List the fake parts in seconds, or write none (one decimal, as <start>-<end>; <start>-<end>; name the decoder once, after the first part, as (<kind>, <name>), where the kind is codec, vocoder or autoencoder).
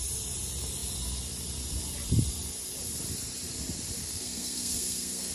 4.0-5.3 (codec, SNAC)